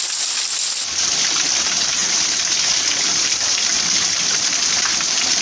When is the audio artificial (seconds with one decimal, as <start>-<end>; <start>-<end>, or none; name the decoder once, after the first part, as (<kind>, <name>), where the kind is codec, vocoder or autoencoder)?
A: none